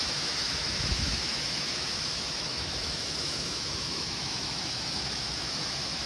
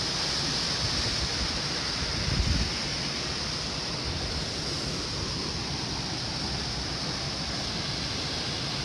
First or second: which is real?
second